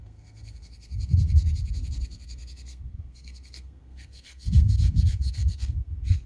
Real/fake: fake